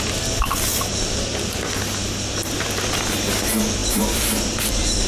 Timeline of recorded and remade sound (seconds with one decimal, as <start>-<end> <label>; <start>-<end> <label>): 0.0-3.8 recorded; 3.8-5.1 remade